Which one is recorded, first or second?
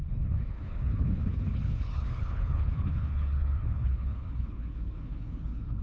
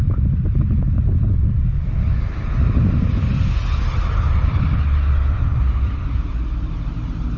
second